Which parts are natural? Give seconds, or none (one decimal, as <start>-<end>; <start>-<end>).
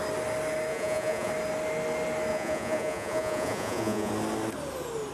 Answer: 0.0-0.7; 1.3-2.3; 4.1-5.1